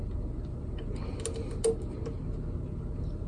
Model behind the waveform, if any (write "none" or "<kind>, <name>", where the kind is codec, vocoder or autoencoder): none